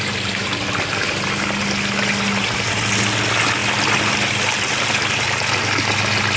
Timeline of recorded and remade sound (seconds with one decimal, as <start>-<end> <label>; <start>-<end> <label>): 0.0-6.4 recorded